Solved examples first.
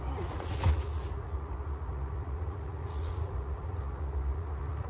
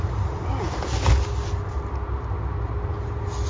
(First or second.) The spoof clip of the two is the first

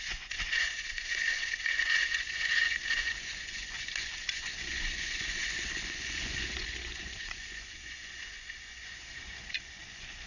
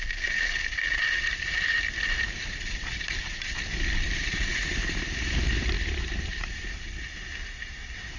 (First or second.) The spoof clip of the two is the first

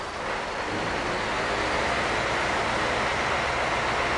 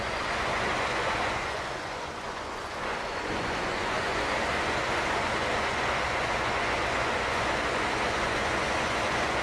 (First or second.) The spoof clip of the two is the second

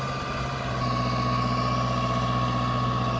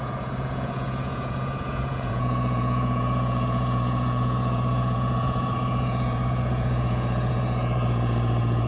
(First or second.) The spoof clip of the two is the second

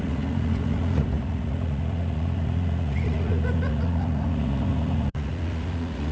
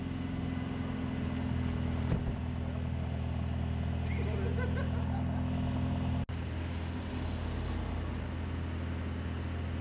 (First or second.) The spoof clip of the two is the first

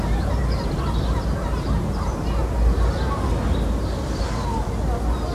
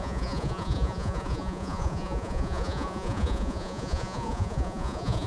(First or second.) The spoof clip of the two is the second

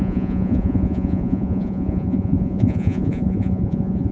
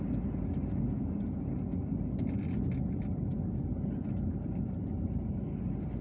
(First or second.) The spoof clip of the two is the first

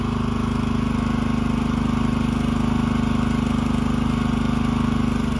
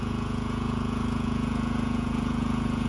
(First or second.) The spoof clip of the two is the second